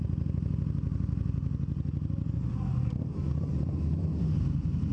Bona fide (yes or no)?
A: yes